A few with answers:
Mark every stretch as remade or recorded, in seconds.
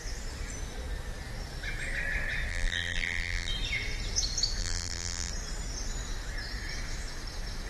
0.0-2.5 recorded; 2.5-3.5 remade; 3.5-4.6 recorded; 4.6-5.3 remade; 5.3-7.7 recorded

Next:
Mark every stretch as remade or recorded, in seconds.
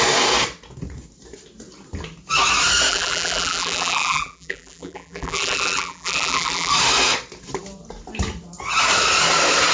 0.0-2.9 recorded; 2.9-6.7 remade; 6.7-9.7 recorded